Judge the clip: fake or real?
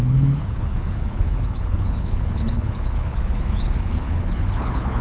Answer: fake